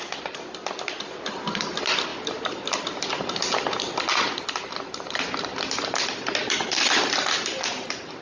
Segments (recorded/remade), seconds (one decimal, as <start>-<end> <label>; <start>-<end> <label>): 0.0-8.2 recorded